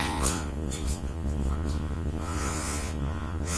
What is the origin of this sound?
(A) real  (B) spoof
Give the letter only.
B